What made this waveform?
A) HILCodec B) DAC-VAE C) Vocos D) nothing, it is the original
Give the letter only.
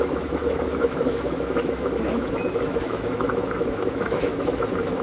B